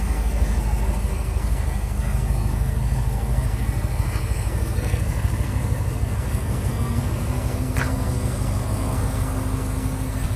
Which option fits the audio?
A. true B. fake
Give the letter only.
B